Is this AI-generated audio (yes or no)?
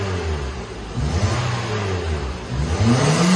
no